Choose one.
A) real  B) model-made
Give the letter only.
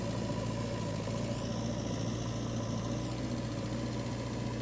A